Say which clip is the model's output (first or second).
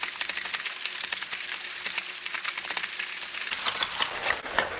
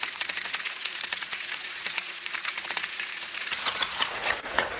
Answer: second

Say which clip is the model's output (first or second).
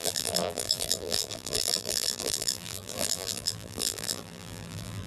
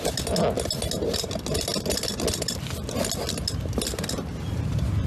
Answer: first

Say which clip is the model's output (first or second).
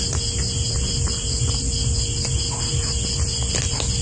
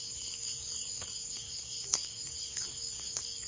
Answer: second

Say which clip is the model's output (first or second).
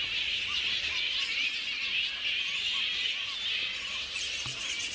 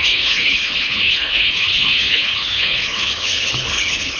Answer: second